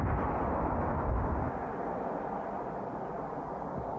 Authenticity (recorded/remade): recorded